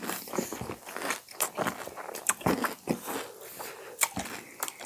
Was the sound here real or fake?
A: real